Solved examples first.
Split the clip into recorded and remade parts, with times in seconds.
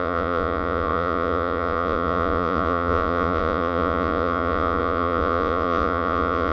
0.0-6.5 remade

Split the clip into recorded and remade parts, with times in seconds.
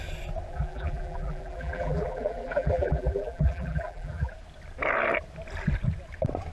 0.0-0.5 recorded; 0.5-4.3 remade; 4.3-6.5 recorded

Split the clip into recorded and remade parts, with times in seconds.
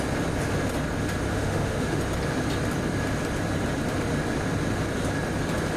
0.0-1.3 recorded; 1.3-2.0 remade; 2.0-5.8 recorded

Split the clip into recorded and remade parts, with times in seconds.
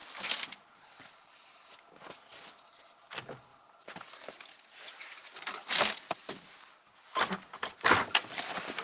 0.0-3.5 recorded; 3.5-5.8 remade; 5.8-8.8 recorded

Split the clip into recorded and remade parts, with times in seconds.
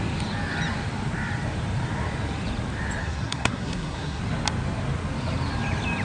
0.0-3.0 recorded; 3.0-4.2 remade; 4.2-6.0 recorded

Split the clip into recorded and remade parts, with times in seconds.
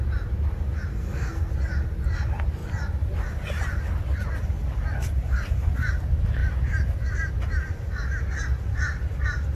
0.0-0.9 recorded; 0.9-1.5 remade; 1.5-9.5 recorded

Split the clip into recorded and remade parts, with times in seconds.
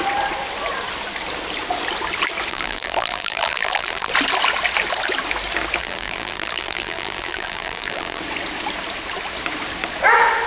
0.0-2.5 recorded; 2.5-4.1 remade; 4.1-5.8 recorded; 5.8-8.2 remade; 8.2-10.5 recorded